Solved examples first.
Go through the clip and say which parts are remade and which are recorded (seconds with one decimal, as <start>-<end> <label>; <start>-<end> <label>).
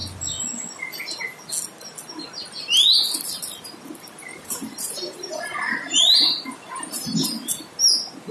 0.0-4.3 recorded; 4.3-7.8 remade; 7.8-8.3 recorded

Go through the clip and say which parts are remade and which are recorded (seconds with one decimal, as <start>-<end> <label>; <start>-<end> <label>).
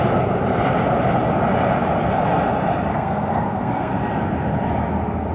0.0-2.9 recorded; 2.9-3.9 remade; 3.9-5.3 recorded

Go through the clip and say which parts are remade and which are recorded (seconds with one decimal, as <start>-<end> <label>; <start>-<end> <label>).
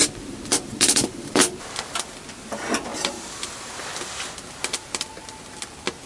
0.0-1.8 remade; 1.8-6.1 recorded